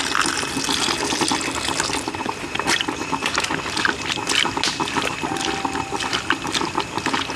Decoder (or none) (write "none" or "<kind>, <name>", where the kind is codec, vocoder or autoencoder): none